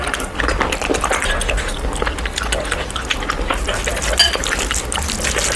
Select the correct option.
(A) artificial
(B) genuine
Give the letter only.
B